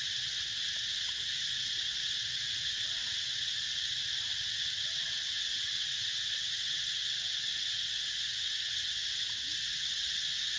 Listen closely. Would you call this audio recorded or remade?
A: remade